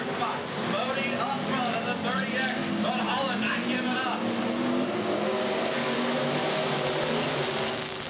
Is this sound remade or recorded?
recorded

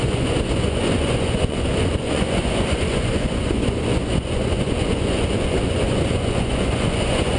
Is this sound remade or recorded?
remade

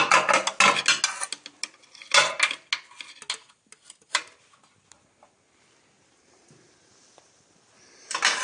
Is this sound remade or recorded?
recorded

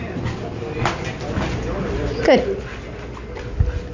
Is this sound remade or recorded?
recorded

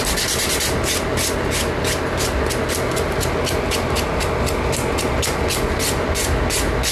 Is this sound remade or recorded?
recorded